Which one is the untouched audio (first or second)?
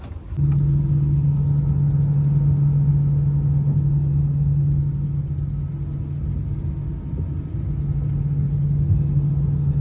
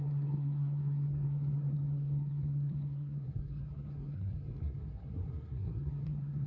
first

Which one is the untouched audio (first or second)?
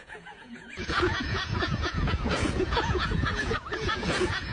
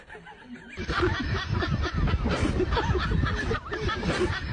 second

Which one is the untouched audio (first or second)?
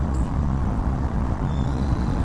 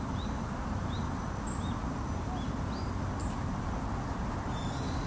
second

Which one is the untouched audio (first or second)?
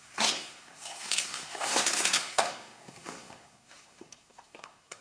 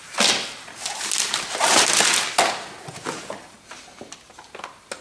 second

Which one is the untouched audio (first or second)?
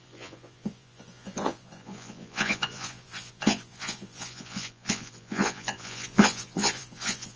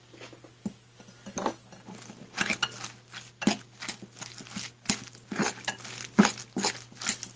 second